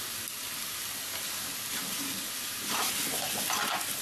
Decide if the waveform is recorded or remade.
recorded